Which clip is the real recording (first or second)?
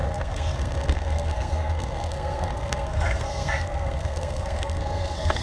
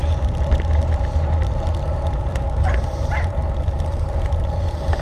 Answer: second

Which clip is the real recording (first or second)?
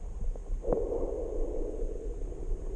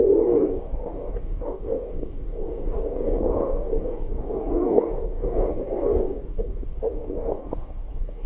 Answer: first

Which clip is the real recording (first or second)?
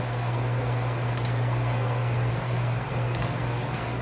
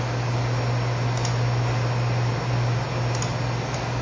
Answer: second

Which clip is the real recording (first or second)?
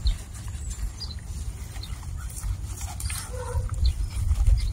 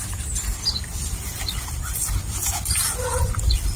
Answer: second